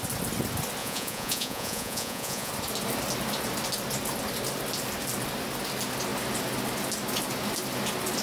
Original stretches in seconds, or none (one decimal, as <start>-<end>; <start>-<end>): 0.0-0.8; 2.5-8.2